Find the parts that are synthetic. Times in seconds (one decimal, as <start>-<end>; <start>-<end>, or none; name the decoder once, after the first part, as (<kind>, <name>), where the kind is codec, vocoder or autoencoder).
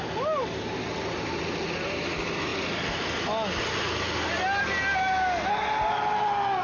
none